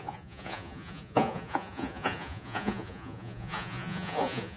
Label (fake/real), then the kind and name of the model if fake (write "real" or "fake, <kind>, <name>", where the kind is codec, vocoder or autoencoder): fake, vocoder, Vocos